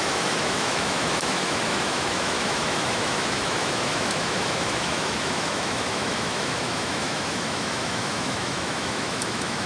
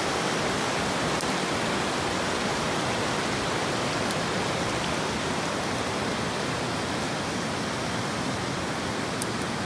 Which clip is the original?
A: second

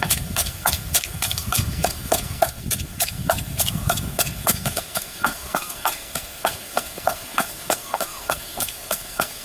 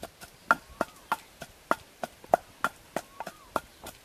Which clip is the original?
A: second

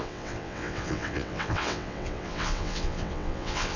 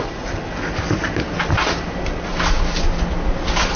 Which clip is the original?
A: second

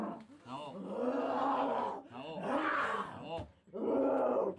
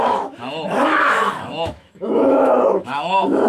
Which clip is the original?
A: first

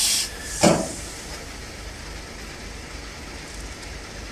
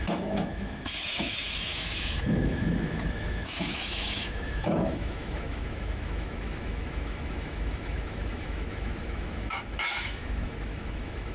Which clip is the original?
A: first